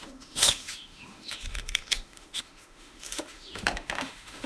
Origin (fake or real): fake